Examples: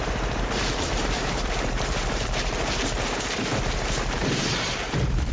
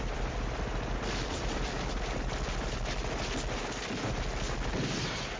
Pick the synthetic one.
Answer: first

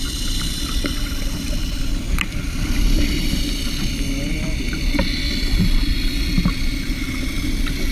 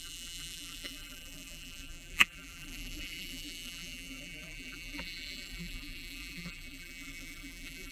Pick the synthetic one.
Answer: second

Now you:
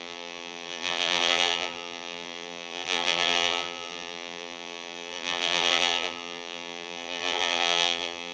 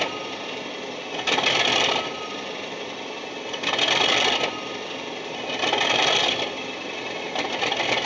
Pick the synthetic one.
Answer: first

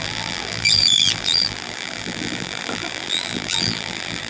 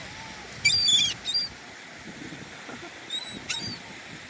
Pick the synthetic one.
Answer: first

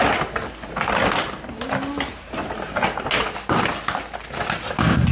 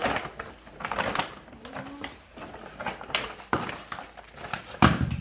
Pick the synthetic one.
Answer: second